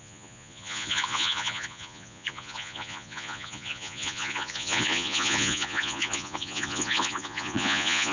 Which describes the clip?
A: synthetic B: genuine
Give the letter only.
A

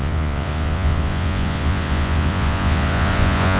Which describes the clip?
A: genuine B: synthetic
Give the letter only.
B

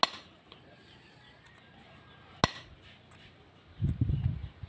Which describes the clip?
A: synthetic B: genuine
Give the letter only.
B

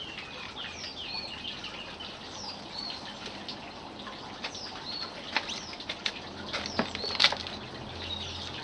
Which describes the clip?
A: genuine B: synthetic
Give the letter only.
A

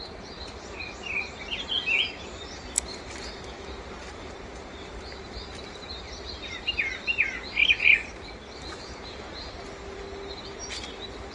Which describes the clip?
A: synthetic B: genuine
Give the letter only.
B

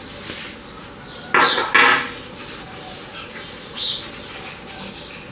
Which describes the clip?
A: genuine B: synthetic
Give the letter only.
A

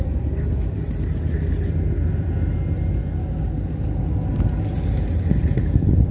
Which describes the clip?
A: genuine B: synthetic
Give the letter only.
A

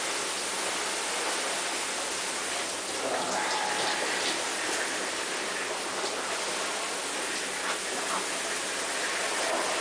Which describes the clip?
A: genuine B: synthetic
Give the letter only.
A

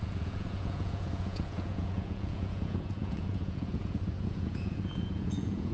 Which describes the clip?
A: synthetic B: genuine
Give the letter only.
A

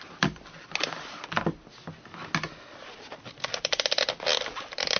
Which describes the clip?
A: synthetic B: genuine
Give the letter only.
B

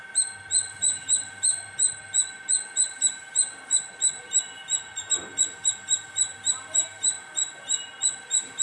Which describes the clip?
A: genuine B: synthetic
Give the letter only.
A